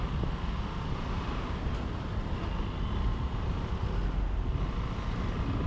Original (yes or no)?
yes